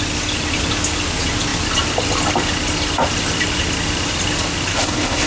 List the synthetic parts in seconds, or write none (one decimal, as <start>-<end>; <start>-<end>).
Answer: 4.7-5.3